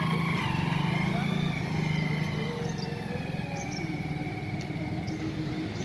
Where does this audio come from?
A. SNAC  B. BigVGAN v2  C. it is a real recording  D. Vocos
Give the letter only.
C